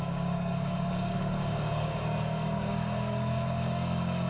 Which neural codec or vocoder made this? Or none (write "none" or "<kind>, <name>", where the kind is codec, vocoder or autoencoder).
codec, DAC